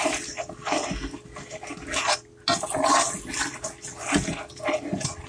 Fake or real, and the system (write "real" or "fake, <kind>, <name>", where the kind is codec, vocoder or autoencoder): real